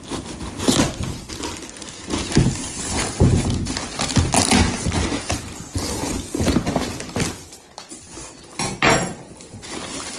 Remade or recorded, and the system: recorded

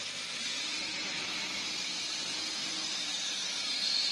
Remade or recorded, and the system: recorded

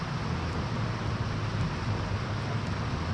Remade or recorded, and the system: recorded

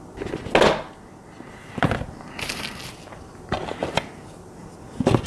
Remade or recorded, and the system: recorded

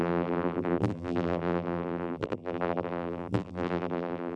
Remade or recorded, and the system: remade, vocoder, BigVGAN v2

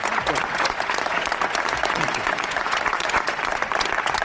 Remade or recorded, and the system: remade, vocoder, Vocos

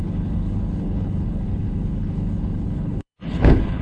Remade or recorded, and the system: remade, codec, HILCodec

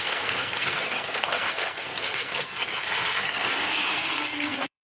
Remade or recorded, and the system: remade, codec, SNAC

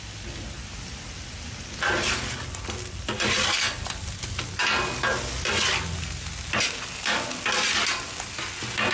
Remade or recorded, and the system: recorded